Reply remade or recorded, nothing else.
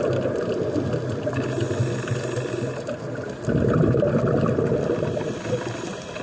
recorded